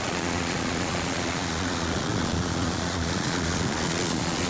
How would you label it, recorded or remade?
remade